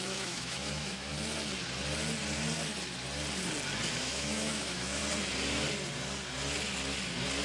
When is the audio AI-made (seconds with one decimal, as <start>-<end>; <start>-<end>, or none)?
0.0-1.1; 3.9-5.0

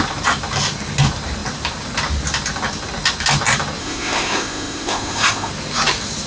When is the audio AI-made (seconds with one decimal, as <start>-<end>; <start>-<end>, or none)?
3.8-5.5

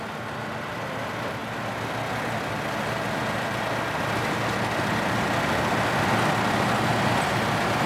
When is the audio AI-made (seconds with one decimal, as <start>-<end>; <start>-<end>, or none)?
none